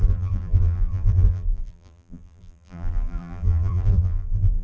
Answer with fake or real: fake